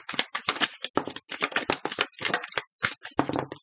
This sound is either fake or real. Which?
real